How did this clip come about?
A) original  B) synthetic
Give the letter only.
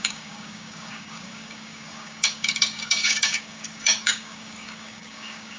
B